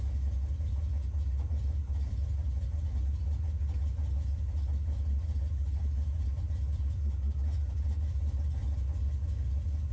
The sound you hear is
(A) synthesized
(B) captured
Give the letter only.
B